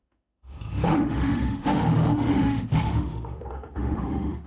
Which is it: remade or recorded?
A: remade